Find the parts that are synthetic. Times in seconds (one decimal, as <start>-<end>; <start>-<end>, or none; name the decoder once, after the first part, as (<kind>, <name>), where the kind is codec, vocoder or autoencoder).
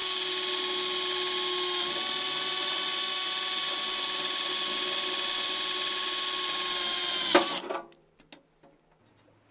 none